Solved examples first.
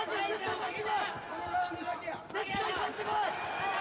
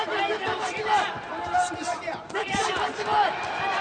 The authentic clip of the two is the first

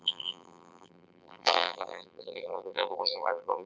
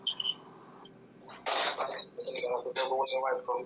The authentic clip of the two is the second